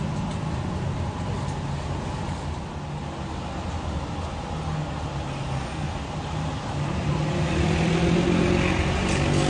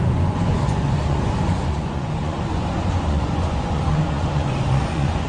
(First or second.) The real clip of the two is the first